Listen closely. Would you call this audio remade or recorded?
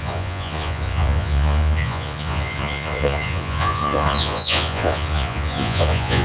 remade